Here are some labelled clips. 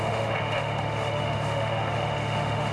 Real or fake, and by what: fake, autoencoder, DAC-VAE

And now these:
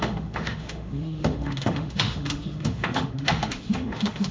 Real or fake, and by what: fake, autoencoder, DAC-VAE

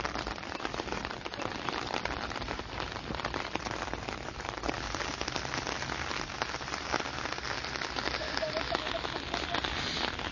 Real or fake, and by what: real